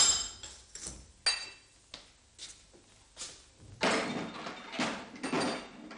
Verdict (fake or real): real